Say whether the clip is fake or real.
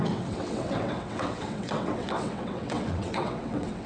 fake